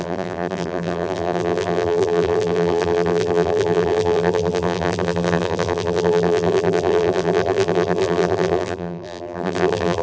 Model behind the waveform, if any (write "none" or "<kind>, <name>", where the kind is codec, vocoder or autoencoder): vocoder, BigVGAN v2